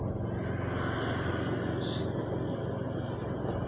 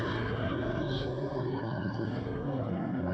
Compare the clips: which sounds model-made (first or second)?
second